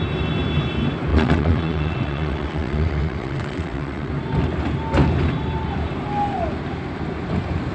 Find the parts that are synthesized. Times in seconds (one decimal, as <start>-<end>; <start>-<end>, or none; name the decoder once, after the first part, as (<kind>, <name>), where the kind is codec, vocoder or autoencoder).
1.1-4.1 (vocoder, WaveNeXt)